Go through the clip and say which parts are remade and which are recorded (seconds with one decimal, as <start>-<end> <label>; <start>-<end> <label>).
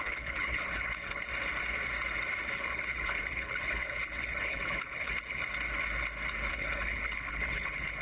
0.0-1.3 remade; 1.3-2.5 recorded; 2.5-5.4 remade; 5.4-6.5 recorded; 6.5-8.0 remade